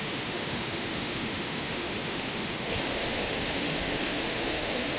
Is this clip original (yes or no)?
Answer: no